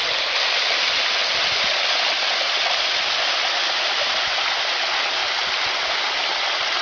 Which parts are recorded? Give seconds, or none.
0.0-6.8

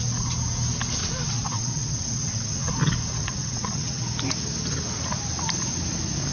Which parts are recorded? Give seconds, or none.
0.0-1.0; 2.7-3.2; 4.0-6.3

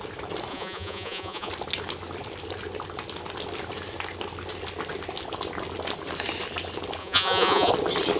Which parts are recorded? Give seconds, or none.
0.0-0.5; 1.5-7.0; 7.7-8.2